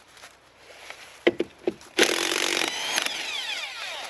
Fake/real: fake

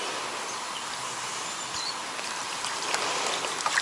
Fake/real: real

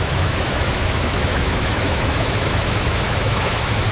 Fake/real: fake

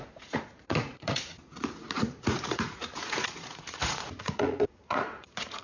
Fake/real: fake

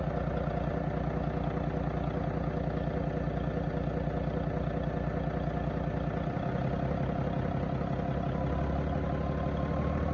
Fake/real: real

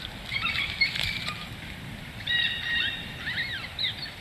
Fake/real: real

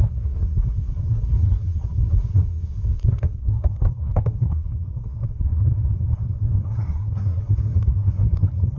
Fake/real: fake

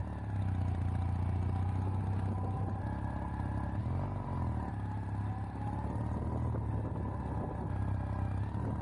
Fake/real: real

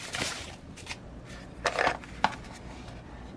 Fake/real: real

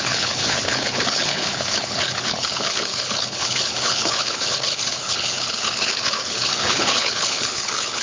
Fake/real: fake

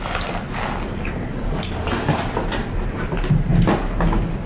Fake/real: real